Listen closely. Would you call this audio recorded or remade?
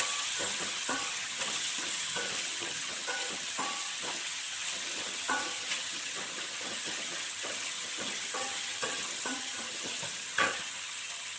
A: remade